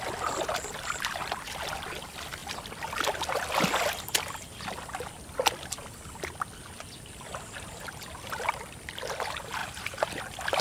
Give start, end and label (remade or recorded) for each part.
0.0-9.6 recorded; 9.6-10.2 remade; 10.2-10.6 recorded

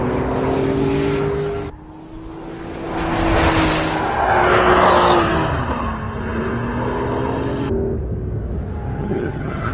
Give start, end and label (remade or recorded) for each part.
0.0-9.0 recorded; 9.0-9.7 remade